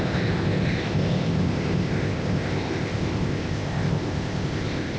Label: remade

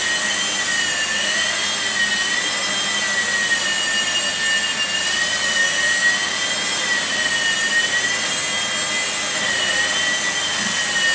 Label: recorded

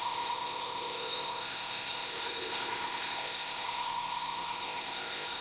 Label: remade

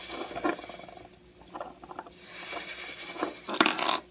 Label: recorded